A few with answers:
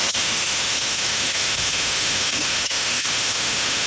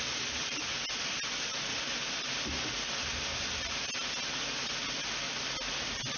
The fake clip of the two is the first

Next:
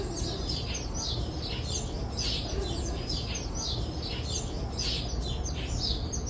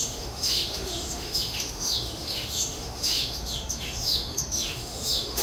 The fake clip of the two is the second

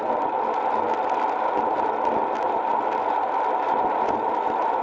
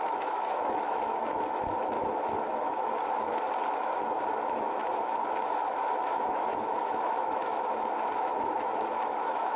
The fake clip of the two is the second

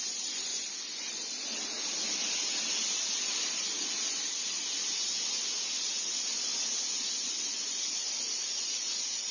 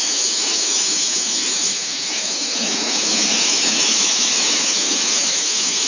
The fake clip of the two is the second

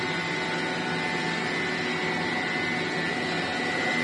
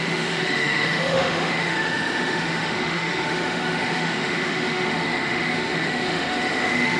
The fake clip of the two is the second